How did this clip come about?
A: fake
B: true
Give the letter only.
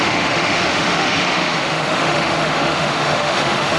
A